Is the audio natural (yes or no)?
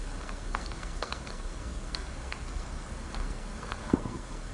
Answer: no